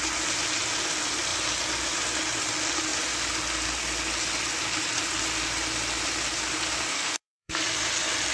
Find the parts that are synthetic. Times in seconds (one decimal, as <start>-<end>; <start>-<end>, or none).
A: 6.9-7.6